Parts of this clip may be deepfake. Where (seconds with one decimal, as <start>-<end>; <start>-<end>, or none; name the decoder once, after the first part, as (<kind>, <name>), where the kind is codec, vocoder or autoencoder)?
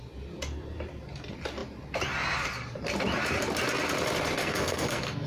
4.4-5.3 (codec, SNAC)